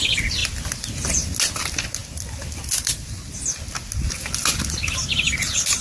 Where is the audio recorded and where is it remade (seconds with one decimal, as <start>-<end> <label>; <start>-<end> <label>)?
0.0-5.8 recorded